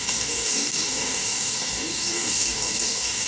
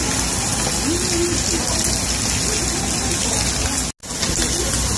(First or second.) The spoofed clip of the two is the first